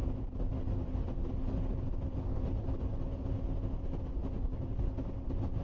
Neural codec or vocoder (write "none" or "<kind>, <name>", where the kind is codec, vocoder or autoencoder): none